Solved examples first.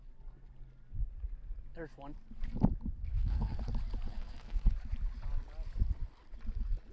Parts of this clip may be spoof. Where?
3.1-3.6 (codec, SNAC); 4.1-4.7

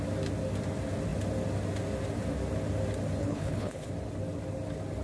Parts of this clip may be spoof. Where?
3.2-3.9 (codec, HILCodec)

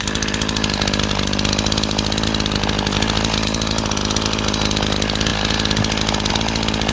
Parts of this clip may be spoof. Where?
none

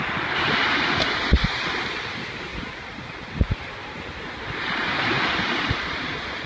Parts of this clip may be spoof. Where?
2.5-3.3 (vocoder, BigVGAN v2); 3.8-6.5

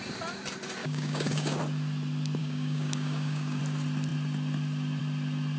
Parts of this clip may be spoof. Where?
0.8-1.6 (codec, DAC); 2.4-3.6

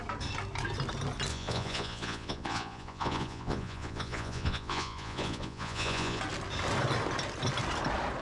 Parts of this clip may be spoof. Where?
1.3-6.2 (vocoder, Vocos)

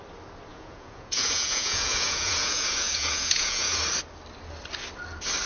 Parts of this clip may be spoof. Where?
0.5-3.8 (vocoder, Vocos)

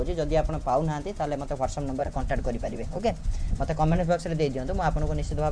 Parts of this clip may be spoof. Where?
2.0-4.2 (vocoder, Vocos)